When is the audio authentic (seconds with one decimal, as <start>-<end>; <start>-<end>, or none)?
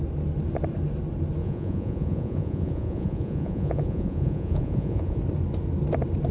0.0-1.4; 5.2-6.3